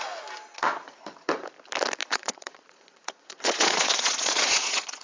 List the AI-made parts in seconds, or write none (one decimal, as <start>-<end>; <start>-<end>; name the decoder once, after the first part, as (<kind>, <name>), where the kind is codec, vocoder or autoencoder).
0.5-1.5 (vocoder, Vocos); 2.0-5.0